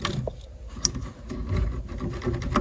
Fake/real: real